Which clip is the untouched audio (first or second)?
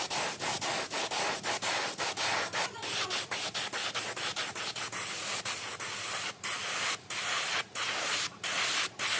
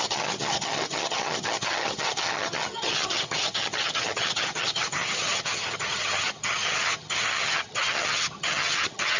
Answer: first